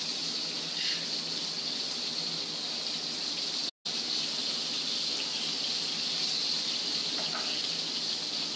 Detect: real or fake real